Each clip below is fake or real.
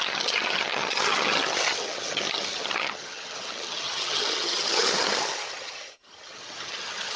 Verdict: fake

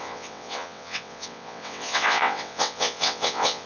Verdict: fake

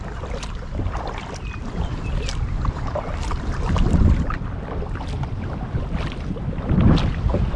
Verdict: real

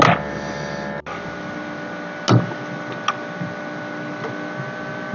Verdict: real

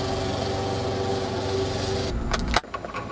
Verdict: real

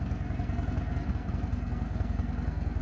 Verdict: fake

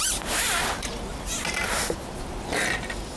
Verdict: real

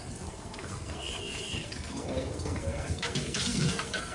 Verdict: fake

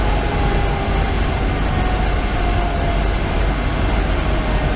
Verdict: real